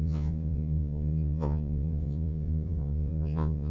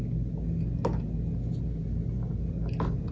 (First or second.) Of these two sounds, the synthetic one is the first